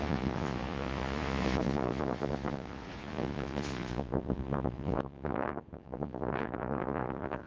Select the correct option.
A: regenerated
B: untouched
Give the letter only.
A